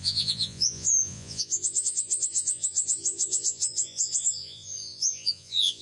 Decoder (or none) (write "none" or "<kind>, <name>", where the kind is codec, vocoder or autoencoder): vocoder, Vocos